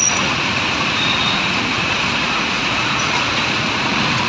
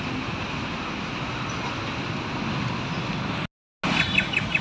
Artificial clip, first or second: first